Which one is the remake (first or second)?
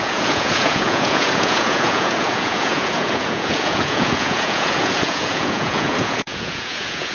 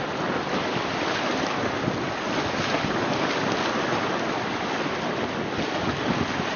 first